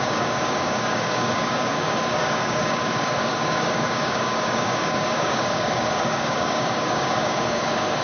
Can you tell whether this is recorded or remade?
remade